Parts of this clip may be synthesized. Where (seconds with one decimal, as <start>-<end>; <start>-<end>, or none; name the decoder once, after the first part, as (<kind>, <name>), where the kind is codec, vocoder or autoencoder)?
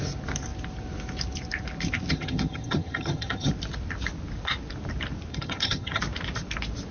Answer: 2.1-3.5 (vocoder, HiFi-GAN); 5.3-6.0